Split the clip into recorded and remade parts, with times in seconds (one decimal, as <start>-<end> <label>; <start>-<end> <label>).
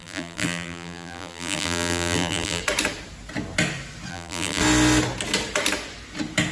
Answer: 0.0-2.6 remade; 2.6-4.1 recorded; 4.1-4.6 remade; 4.6-6.5 recorded